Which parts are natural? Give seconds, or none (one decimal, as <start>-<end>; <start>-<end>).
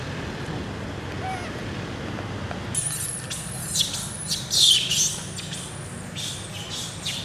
0.0-7.2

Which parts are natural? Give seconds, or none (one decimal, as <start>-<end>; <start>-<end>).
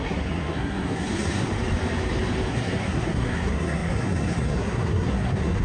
1.5-2.5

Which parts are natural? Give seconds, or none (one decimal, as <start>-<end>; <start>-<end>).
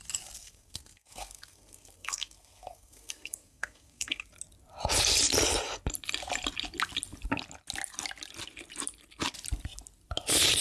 0.0-0.4; 4.3-10.6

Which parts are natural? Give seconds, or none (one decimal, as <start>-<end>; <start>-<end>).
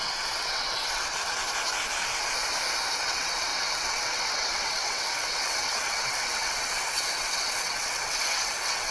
1.4-3.0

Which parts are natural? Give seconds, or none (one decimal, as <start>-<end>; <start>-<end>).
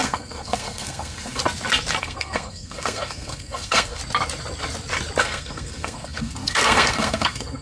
1.4-2.0; 4.0-5.2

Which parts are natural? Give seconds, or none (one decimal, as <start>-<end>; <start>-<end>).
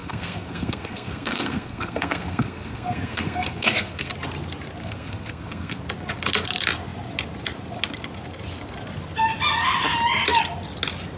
4.1-4.8; 5.8-11.2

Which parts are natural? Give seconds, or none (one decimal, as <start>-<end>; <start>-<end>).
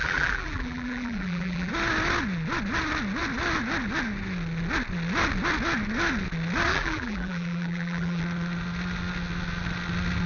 1.7-6.7; 8.2-10.3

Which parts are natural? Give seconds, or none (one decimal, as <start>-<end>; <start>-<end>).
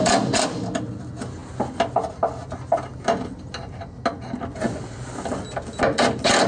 0.0-6.5